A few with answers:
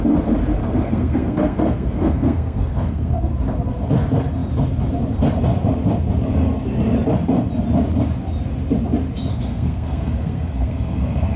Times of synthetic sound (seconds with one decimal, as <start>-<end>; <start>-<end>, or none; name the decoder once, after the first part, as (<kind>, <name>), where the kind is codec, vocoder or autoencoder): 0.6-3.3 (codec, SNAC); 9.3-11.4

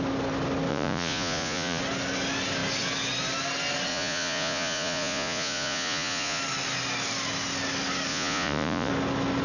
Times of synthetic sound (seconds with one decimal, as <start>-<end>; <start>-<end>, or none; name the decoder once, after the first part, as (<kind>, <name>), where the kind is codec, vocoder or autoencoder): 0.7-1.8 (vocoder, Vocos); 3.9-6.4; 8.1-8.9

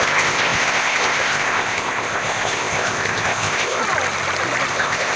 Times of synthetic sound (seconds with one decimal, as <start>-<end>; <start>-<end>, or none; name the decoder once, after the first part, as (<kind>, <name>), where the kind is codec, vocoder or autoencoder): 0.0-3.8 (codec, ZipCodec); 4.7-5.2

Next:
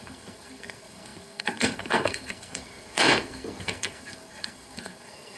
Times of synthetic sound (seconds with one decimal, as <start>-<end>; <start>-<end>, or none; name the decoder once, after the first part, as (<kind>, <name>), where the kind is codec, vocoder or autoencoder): 0.0-5.4 (codec, SNAC)

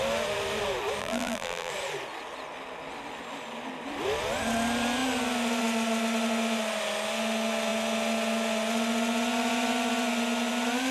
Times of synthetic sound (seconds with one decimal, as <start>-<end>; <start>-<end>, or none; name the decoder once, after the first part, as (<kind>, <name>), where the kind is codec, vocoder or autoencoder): 1.0-1.7 (vocoder, BigVGAN v2)

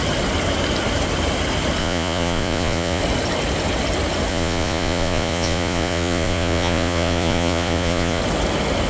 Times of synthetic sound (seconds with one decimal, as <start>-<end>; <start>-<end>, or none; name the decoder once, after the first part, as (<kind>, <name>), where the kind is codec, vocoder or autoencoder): 1.8-3.0 (vocoder, Vocos); 4.3-8.2

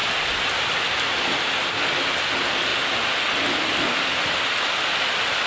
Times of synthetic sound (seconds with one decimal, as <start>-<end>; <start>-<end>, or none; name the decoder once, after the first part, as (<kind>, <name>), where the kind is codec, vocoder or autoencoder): none